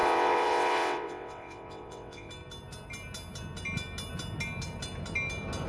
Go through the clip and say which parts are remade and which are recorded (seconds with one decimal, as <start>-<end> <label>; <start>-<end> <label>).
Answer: 0.0-2.3 remade; 2.3-5.7 recorded